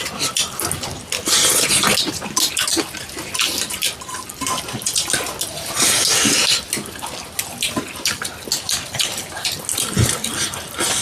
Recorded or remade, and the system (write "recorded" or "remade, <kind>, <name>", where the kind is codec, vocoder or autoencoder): recorded